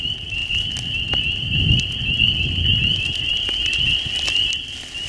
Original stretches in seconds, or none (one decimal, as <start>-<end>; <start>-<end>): 0.0-5.1